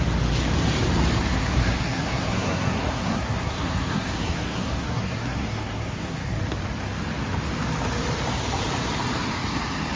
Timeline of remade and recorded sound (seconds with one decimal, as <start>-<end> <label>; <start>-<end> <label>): 0.0-1.3 recorded; 1.3-6.4 remade; 6.4-10.0 recorded